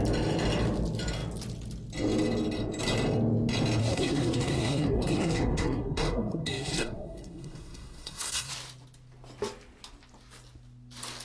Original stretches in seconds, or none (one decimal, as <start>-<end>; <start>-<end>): 0.0-3.8; 8.5-11.2

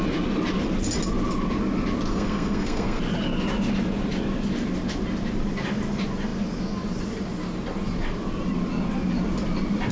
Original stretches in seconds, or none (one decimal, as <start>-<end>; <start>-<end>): 0.0-2.1; 3.0-9.9

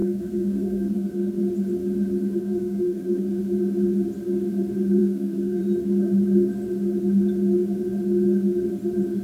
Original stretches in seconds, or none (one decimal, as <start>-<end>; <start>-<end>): 1.4-2.4; 3.4-5.0; 5.6-9.2

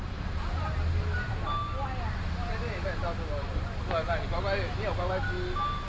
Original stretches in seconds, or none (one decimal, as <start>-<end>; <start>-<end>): 0.0-5.9

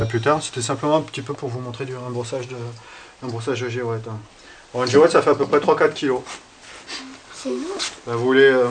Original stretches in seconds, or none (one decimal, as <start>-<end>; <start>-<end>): 0.0-8.7

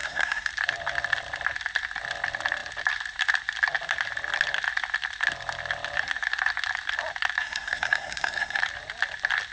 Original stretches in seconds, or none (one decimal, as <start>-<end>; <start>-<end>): 0.5-7.4; 8.6-9.5

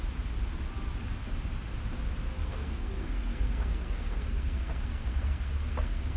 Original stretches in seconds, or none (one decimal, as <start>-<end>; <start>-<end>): 0.0-2.4

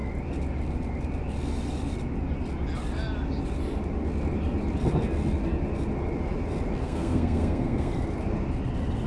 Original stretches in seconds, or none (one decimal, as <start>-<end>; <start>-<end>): 0.0-6.8; 7.9-9.1